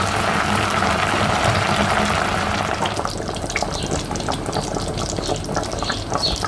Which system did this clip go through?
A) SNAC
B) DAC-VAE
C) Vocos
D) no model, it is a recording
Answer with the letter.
D